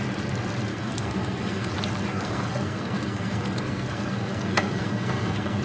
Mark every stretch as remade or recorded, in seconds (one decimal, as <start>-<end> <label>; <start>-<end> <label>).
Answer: 0.0-0.7 recorded; 0.7-1.7 remade; 1.7-2.1 recorded; 2.1-5.6 remade